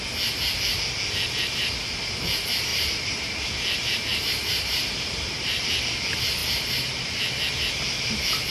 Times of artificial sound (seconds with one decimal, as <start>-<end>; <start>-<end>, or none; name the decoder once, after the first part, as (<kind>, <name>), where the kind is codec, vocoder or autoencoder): 2.7-3.5 (vocoder, BigVGAN v2); 4.1-5.6; 6.4-7.2